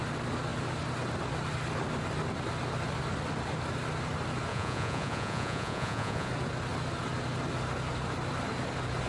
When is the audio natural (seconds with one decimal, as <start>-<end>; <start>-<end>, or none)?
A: 0.0-4.5; 6.3-9.1